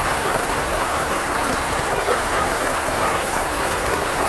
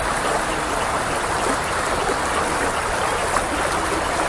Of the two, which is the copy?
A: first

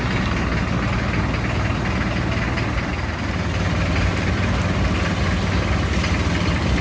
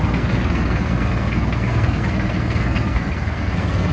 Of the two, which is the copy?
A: second